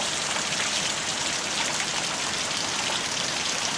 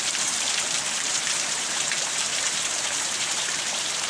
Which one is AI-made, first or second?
second